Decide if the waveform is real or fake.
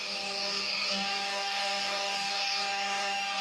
fake